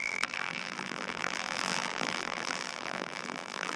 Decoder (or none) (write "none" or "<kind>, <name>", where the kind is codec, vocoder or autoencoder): vocoder, BigVGAN v2